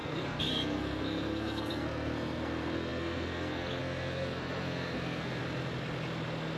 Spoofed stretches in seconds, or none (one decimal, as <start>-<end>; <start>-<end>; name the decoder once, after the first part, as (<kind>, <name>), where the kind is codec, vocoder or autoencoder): 0.0-5.4 (codec, SNAC)